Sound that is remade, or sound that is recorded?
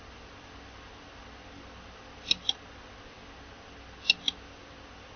recorded